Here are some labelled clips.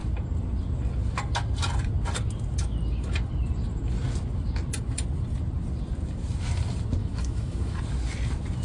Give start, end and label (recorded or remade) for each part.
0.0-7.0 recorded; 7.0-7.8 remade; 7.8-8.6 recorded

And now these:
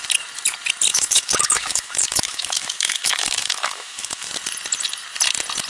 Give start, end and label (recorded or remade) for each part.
0.0-0.9 recorded; 0.9-4.3 remade; 4.3-5.7 recorded

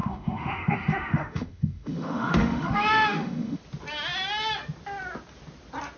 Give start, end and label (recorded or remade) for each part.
0.0-3.6 remade; 3.6-6.0 recorded

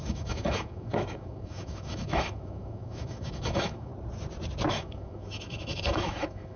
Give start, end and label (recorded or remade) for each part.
0.0-3.9 remade; 3.9-4.7 recorded; 4.7-6.6 remade

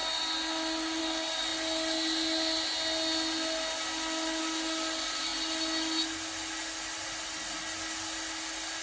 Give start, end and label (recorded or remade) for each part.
0.0-8.8 recorded

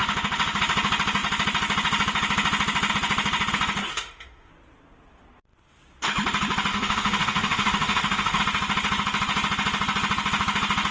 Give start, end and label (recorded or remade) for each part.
0.0-3.9 recorded; 3.9-4.5 remade; 4.5-6.7 recorded; 6.7-8.4 remade; 8.4-10.9 recorded

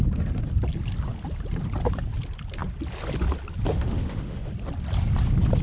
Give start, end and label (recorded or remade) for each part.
0.0-3.7 recorded; 3.7-4.5 remade; 4.5-5.6 recorded